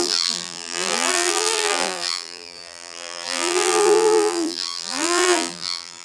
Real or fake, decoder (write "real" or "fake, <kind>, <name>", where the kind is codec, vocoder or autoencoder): fake, vocoder, BigVGAN v2